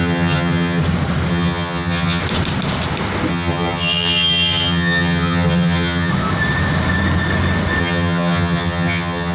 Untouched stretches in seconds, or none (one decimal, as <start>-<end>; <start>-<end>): 0.8-1.3; 2.2-3.3; 6.1-7.8